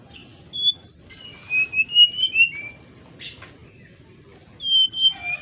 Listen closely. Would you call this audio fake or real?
real